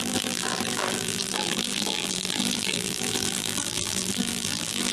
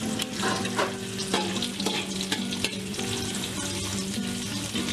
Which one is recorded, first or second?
second